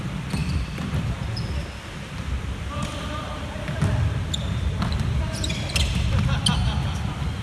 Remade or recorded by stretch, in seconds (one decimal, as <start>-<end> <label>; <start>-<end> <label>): 0.0-0.4 recorded; 0.4-0.9 remade; 0.9-2.9 recorded; 2.9-5.5 remade; 5.5-7.4 recorded

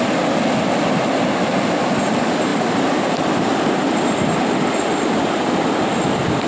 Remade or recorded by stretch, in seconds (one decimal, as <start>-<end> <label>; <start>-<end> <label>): 0.0-2.5 recorded; 2.5-4.4 remade; 4.4-6.5 recorded

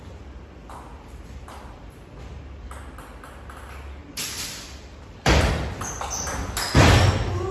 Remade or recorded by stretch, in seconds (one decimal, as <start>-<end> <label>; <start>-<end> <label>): 0.0-0.6 recorded; 0.6-1.8 remade; 1.8-4.0 recorded; 4.0-6.0 remade; 6.0-7.5 recorded

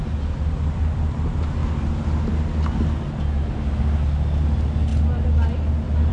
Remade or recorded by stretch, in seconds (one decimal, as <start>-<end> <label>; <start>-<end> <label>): 0.0-6.1 recorded

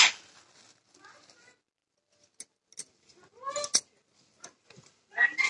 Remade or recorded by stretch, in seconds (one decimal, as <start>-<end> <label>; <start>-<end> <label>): 0.0-5.5 recorded

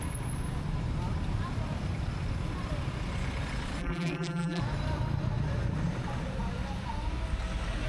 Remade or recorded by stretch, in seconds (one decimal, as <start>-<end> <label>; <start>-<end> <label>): 0.0-3.8 recorded; 3.8-4.6 remade; 4.6-7.9 recorded